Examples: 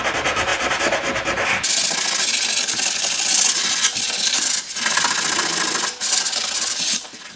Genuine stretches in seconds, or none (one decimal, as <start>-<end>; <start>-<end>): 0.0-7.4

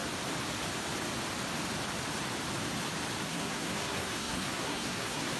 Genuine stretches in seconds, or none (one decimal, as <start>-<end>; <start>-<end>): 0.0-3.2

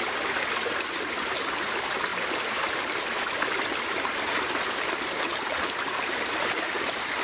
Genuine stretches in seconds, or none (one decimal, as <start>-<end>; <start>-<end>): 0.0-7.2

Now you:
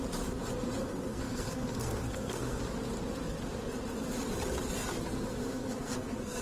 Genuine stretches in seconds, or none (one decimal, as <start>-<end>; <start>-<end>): 0.0-0.8; 2.6-5.4